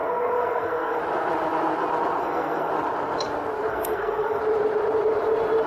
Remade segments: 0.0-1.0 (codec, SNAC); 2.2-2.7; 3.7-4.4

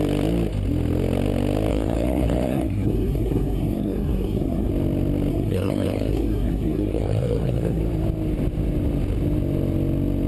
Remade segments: 1.7-4.7 (codec, SNAC); 5.3-7.8